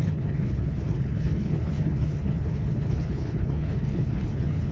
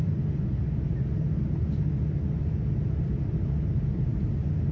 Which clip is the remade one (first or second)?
first